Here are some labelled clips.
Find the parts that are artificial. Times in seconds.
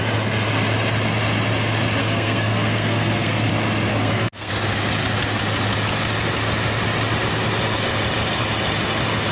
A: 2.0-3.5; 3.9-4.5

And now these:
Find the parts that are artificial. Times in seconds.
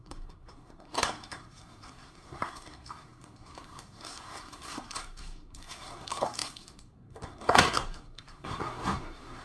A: 0.0-9.4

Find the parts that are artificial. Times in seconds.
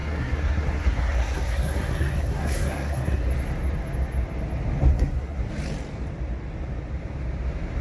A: 0.0-3.3; 4.9-5.5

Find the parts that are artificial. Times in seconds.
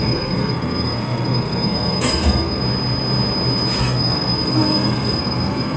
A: 0.0-2.6; 3.8-5.8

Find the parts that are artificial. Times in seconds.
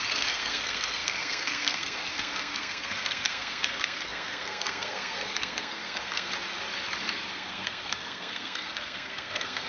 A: 0.0-6.3; 7.3-9.7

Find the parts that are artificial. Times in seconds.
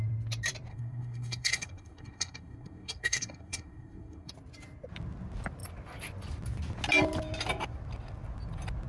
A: 0.7-4.3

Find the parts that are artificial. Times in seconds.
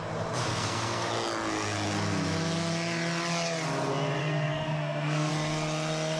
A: 0.5-1.1; 4.2-5.3